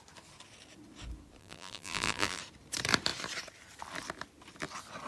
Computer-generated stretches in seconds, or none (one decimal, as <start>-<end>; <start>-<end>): 1.4-2.4